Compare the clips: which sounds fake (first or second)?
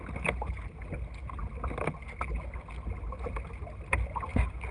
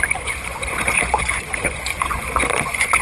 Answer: second